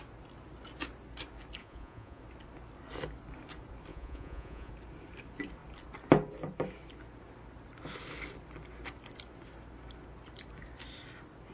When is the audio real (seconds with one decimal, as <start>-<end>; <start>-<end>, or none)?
0.0-1.6; 2.2-3.9; 4.7-11.5